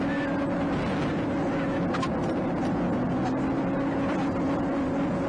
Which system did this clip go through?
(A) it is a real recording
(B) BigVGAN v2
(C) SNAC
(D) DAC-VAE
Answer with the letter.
A